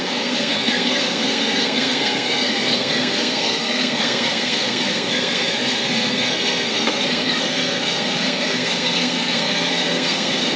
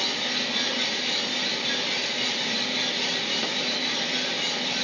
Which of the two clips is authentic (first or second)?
second